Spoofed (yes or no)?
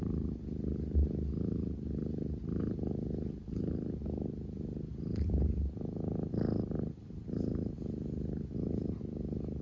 no